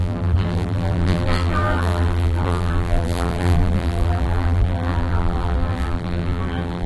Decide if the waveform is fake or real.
fake